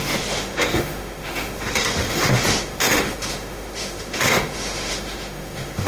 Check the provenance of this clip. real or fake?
fake